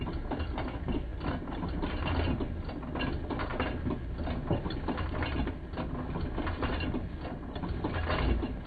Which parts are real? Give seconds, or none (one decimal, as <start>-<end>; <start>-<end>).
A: 0.0-8.7